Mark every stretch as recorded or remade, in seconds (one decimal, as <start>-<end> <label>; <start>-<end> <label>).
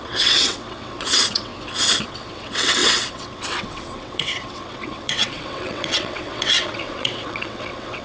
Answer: 0.0-1.5 remade; 1.5-2.1 recorded; 2.1-8.0 remade